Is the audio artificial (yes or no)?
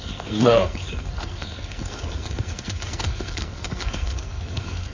yes